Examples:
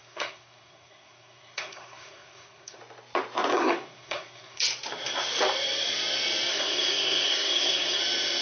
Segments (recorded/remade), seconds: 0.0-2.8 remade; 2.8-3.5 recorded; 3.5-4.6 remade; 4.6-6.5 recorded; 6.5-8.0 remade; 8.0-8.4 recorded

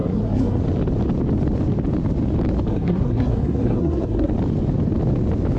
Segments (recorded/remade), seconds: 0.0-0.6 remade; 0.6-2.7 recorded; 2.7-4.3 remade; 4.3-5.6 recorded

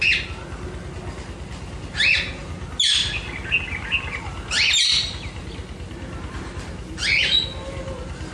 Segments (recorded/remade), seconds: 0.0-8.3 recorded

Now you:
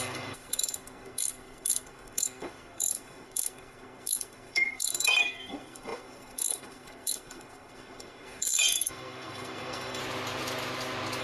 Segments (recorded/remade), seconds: 0.0-10.0 remade; 10.0-11.2 recorded

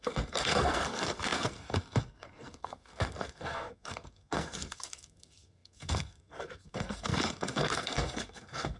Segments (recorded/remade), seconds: 0.0-8.8 remade